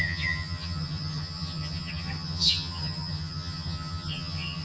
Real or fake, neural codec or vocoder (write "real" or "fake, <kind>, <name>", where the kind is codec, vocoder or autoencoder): fake, vocoder, HiFi-GAN